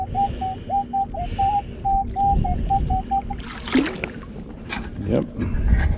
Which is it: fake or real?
real